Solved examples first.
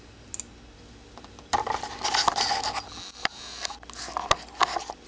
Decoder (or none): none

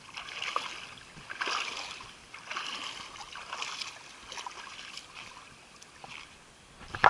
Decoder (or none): none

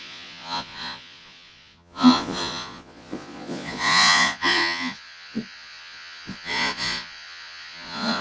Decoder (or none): vocoder, Vocos